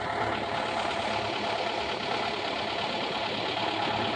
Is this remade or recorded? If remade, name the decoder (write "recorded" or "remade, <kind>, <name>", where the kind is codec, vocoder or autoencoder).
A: recorded